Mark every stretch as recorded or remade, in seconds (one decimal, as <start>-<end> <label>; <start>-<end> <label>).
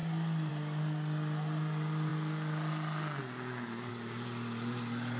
0.0-5.2 recorded